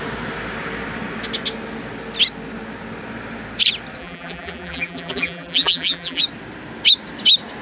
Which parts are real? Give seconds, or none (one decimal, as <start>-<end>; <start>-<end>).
0.0-4.0; 6.2-7.6